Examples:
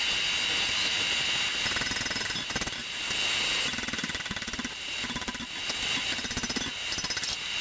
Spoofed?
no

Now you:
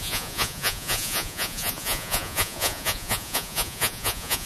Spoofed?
yes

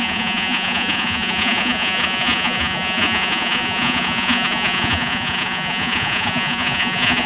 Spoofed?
yes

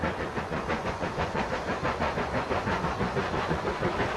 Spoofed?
yes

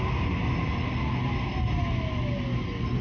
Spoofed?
no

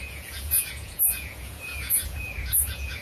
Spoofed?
yes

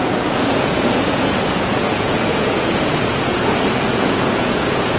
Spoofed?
yes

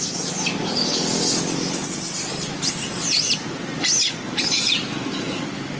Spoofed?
no